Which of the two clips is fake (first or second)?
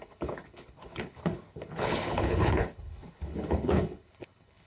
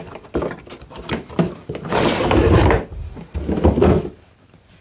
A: first